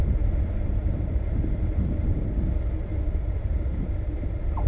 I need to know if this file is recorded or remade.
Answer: remade